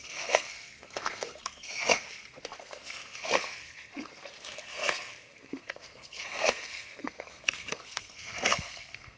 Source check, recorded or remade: remade